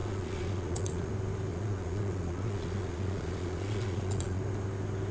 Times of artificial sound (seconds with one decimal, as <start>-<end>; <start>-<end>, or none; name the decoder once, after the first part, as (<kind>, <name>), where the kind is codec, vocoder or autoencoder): 0.0-1.1 (vocoder, Vocos); 1.5-4.4